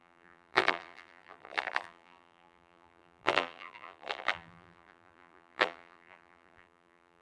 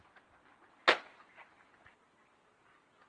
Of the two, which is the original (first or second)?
second